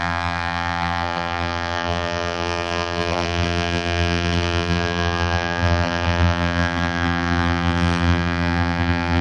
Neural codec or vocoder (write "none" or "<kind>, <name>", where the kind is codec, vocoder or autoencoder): vocoder, BigVGAN v2